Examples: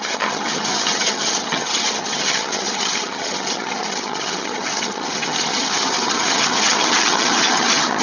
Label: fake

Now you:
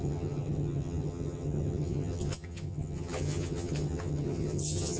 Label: fake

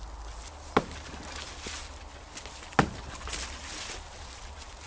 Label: real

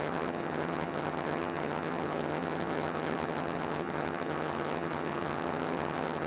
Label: fake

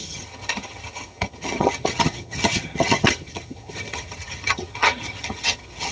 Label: fake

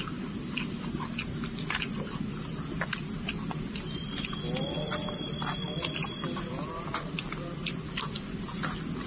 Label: real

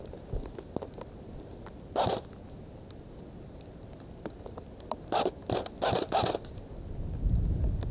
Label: real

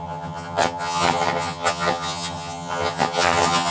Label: fake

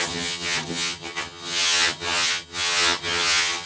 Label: fake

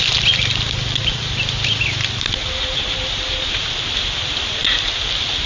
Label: real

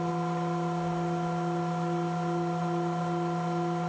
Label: real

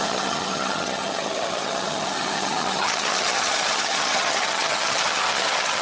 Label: fake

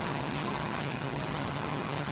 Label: fake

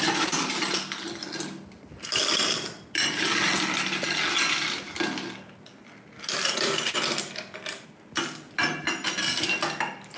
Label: real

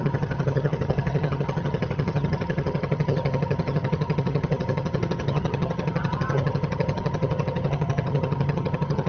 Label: fake